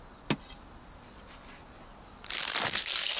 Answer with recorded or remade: recorded